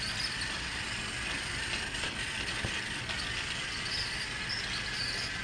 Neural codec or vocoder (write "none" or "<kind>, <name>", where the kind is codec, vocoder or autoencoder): none